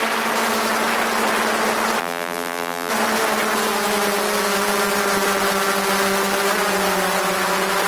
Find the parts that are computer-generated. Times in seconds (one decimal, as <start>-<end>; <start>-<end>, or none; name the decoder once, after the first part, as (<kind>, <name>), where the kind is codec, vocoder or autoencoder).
2.0-2.9 (vocoder, BigVGAN v2)